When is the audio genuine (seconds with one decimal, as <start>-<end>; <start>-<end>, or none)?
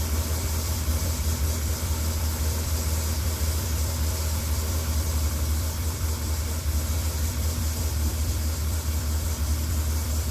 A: none